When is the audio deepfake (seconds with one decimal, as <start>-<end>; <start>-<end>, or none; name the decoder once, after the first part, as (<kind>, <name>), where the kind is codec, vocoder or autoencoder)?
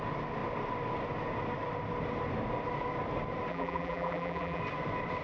3.5-4.6 (vocoder, BigVGAN v2)